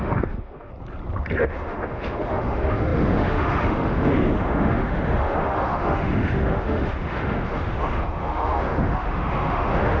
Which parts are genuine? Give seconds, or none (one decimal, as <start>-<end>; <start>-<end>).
0.7-1.4